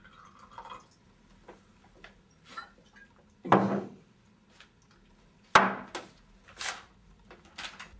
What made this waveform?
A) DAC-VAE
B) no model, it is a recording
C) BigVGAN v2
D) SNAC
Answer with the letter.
B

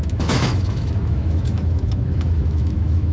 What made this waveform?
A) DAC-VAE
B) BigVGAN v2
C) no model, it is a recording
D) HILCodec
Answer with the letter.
A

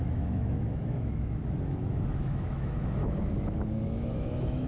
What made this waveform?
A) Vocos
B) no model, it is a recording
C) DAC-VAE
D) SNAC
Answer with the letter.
C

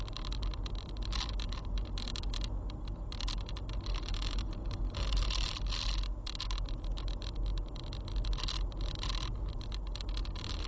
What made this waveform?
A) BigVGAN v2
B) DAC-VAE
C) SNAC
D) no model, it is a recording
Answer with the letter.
D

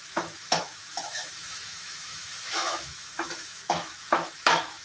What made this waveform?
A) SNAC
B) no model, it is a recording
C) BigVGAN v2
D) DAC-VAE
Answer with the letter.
D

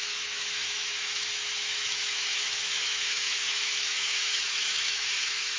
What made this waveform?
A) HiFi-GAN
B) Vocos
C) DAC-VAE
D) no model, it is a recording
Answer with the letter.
C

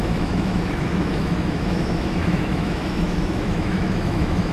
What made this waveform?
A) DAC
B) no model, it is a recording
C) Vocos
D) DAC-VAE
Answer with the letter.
D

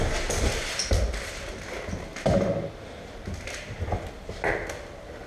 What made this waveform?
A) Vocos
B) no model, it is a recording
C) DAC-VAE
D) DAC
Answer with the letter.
B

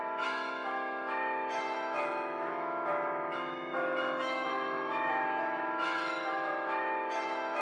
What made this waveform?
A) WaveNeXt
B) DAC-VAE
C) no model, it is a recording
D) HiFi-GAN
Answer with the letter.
B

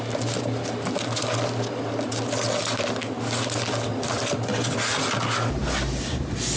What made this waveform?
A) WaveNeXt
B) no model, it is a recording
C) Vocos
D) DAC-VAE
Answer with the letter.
B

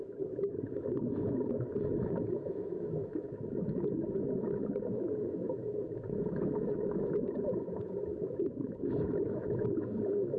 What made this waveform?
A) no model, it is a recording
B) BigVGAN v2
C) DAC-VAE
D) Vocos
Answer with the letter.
C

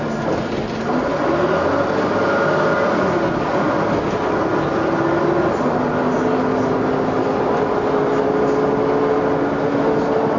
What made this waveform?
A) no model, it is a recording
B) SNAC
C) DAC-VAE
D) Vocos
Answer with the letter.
A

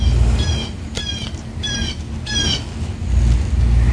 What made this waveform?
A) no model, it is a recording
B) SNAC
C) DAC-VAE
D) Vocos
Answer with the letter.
A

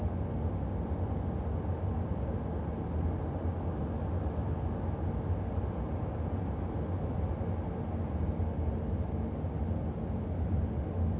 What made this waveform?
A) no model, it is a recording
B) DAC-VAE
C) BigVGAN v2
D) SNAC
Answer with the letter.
A